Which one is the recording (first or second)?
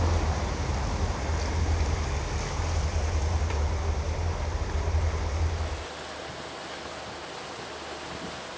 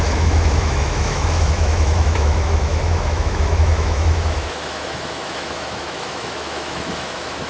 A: first